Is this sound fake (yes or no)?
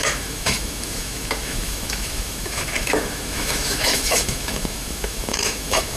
yes